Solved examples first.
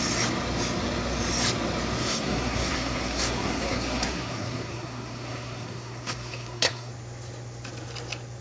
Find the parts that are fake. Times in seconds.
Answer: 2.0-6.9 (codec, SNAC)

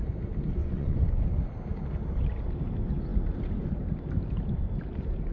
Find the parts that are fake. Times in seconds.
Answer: 0.6-1.2 (vocoder, Vocos)

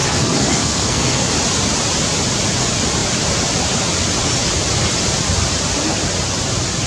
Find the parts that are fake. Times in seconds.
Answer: 0.0-1.3 (codec, SNAC)

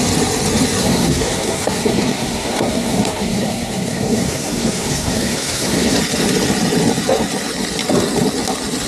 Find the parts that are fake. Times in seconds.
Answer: 0.8-6.0 (codec, SNAC)

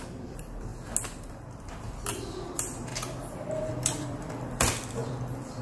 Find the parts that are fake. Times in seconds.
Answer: 0.0-0.7 (vocoder, BigVGAN v2); 1.3-2.9; 3.7-5.6

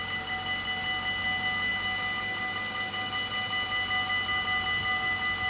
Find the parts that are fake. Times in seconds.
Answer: none

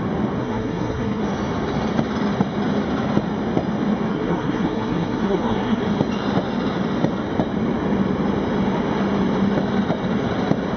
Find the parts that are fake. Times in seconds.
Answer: 0.4-1.2 (codec, SNAC); 4.1-5.8